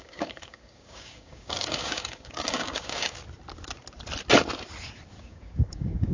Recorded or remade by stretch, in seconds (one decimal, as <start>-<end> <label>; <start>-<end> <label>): 0.0-3.2 remade; 3.2-5.2 recorded; 5.2-6.1 remade